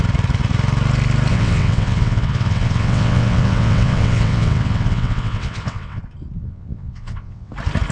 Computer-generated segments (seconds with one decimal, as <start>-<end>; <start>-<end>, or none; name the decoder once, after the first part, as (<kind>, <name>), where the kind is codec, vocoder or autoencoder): 1.3-6.0 (vocoder, WaveNeXt); 6.4-7.5